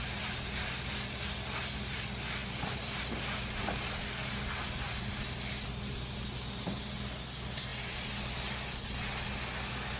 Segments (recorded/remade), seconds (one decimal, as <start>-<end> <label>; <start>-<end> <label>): 0.0-10.0 recorded